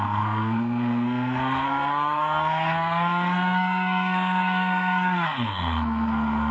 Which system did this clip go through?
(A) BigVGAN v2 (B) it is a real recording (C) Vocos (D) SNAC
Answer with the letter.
D